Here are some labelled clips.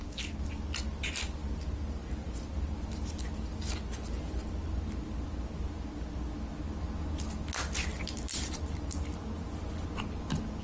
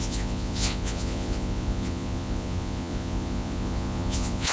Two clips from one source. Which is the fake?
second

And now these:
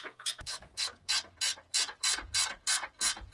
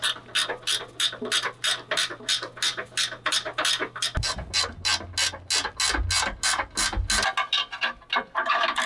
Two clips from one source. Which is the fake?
first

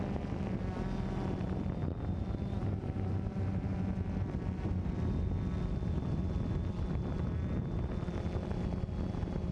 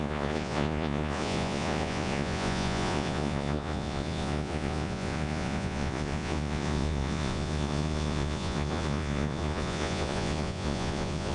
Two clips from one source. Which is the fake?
second